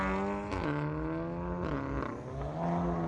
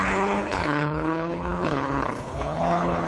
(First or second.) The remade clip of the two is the second